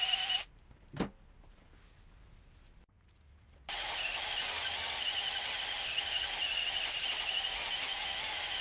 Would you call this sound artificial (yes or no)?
no